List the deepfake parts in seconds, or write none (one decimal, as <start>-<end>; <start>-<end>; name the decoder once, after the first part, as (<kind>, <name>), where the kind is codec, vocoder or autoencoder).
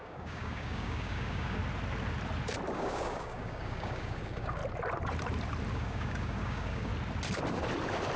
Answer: 0.0-1.6 (codec, DAC); 2.7-4.6; 5.7-6.9